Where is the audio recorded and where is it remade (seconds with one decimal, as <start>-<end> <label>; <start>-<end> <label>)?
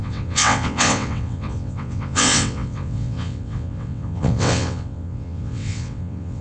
0.0-6.4 remade